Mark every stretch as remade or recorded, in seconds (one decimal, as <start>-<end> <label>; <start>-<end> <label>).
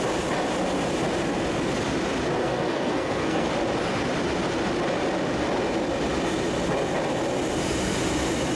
0.0-2.4 recorded; 2.4-3.5 remade; 3.5-8.6 recorded